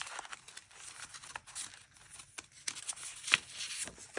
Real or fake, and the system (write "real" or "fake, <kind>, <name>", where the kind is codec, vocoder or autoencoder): real